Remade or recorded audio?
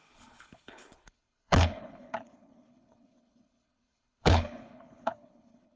remade